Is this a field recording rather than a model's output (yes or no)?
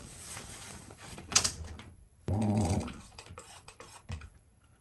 no